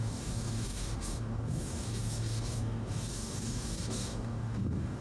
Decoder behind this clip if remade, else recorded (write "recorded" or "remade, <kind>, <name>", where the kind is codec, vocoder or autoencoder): remade, codec, DAC